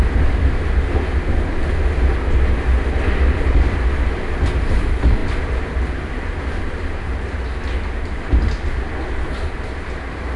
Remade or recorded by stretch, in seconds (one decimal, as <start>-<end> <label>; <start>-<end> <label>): 0.0-10.4 recorded